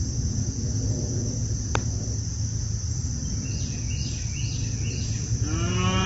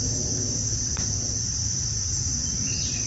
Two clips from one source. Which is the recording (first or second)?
first